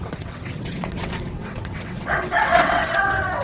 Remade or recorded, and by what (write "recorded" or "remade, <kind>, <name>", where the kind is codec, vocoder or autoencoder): remade, vocoder, WaveNeXt